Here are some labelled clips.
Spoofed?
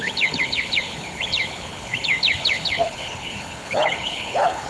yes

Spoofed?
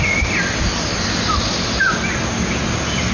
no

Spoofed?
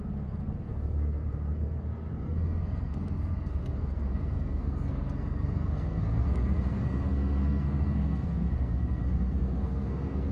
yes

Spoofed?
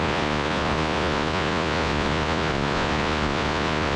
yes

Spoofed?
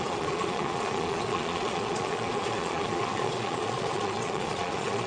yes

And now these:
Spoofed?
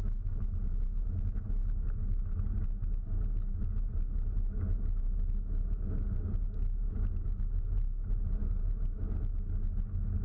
no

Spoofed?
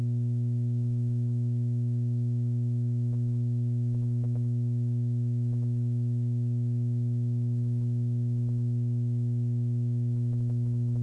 yes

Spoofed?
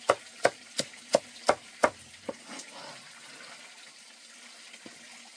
no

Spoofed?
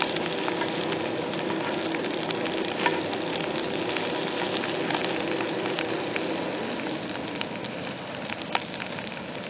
no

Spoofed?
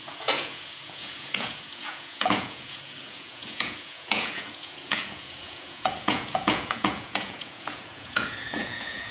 yes